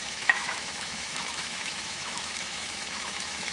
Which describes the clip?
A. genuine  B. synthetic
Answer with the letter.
B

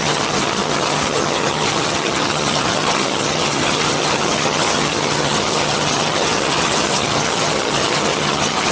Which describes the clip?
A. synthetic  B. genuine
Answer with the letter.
A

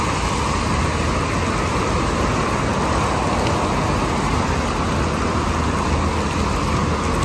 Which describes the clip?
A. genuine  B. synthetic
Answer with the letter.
A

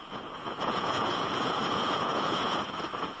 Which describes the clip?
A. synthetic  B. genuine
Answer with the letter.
A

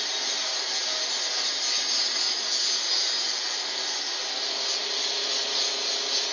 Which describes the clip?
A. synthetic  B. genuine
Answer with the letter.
B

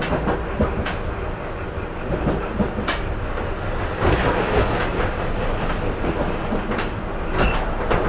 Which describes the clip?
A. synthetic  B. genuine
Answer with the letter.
B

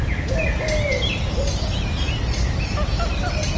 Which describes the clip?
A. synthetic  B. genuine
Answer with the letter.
B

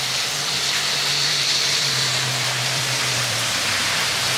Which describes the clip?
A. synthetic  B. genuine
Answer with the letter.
A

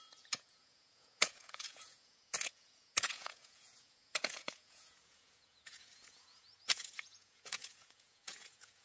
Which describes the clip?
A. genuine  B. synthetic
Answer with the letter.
B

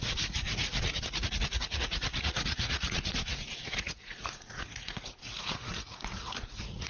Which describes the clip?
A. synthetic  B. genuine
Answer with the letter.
A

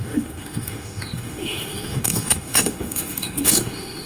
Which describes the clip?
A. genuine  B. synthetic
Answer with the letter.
B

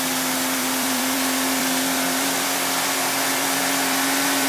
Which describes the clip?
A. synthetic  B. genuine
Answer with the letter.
A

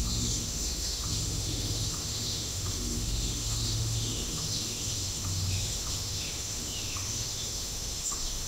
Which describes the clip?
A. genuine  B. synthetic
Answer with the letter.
B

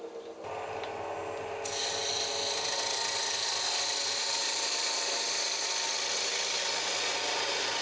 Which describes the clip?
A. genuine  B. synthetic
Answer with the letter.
A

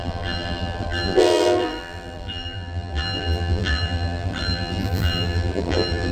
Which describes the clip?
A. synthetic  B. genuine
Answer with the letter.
A